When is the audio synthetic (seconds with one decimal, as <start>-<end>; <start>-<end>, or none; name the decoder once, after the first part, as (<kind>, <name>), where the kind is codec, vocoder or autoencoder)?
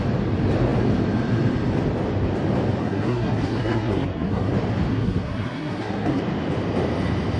2.8-4.5 (codec, SNAC); 4.9-6.2